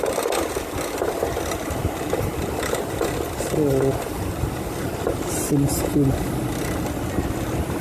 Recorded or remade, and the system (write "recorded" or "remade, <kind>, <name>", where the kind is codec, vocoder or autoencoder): recorded